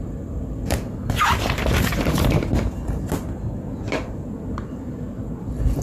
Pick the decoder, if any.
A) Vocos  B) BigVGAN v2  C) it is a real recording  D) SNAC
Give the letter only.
C